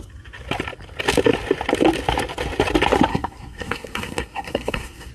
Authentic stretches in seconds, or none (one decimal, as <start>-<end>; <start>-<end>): 0.0-3.1